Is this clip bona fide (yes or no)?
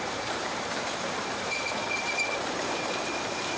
no